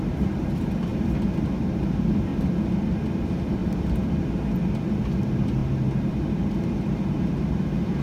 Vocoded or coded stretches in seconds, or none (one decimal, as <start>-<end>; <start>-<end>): 0.0-0.9; 1.5-2.3; 3.1-3.6; 5.0-8.0